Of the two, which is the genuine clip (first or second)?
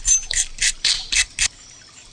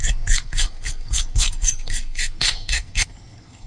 first